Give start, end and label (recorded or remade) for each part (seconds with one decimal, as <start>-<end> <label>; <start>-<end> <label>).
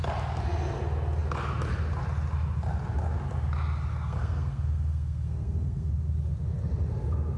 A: 0.0-3.9 recorded; 3.9-5.9 remade; 5.9-7.4 recorded